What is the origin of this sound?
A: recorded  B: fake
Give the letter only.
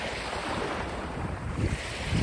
B